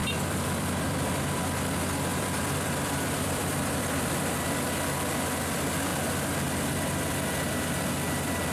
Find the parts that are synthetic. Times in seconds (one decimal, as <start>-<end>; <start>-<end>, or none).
0.0-1.4; 2.1-4.5